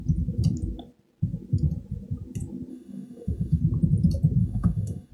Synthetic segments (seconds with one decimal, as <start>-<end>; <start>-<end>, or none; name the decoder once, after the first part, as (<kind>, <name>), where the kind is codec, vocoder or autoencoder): 2.7-3.6 (autoencoder, DAC-VAE); 4.4-5.1